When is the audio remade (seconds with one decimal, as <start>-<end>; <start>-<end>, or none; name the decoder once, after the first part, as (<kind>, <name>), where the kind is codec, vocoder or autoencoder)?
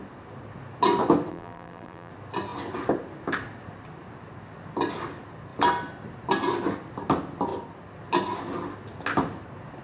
1.3-2.1 (vocoder, BigVGAN v2)